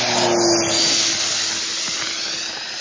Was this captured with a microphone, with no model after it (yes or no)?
yes